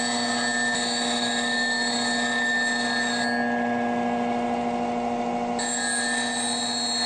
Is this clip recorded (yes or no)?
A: yes